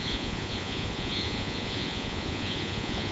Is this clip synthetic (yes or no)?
yes